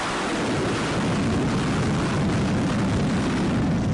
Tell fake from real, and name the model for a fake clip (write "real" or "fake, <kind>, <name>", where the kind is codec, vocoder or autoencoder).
real